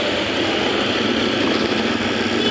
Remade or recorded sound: recorded